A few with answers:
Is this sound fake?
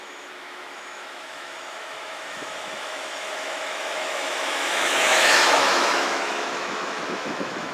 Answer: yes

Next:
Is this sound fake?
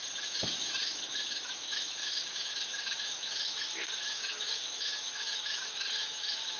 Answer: yes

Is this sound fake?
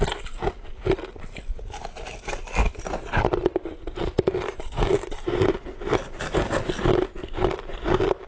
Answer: no